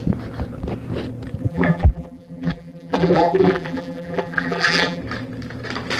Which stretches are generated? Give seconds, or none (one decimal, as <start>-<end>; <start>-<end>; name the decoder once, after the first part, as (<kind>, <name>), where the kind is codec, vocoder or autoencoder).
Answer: 1.4-5.0 (vocoder, BigVGAN v2)